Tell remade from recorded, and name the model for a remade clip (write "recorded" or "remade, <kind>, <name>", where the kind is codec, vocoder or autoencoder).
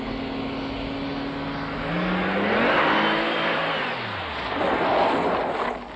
recorded